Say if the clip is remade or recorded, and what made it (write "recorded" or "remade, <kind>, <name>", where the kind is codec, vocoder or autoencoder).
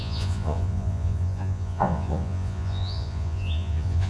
remade, vocoder, Vocos